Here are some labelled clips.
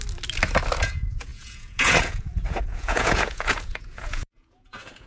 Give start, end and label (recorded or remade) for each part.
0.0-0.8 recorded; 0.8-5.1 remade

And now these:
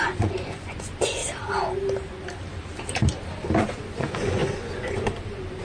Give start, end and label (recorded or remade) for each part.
0.0-1.2 remade; 1.2-3.6 recorded; 3.6-5.6 remade

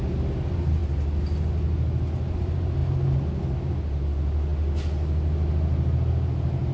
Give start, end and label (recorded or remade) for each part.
0.0-6.7 recorded